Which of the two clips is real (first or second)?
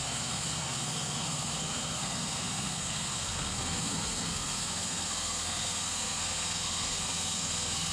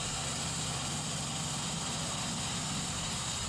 second